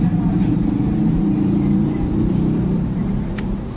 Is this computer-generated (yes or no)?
yes